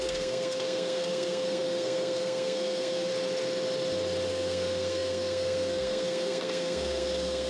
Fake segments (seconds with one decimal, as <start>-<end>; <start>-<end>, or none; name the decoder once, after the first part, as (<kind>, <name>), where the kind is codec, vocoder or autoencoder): 0.0-3.1 (codec, SNAC); 4.3-7.5